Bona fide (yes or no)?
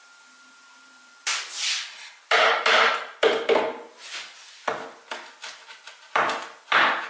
yes